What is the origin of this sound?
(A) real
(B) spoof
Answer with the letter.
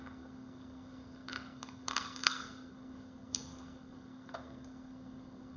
B